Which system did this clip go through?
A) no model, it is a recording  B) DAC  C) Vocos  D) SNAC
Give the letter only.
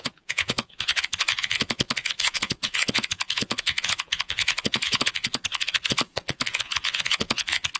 C